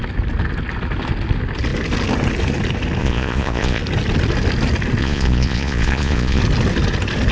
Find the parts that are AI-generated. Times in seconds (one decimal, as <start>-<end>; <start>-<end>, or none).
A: 3.0-3.8; 5.0-6.4